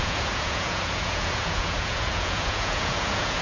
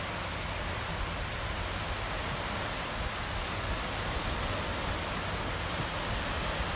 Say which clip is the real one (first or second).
second